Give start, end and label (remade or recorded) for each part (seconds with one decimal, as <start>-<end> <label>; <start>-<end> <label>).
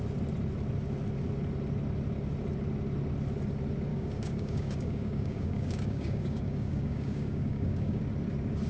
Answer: 0.0-3.9 recorded; 3.9-8.0 remade; 8.0-8.7 recorded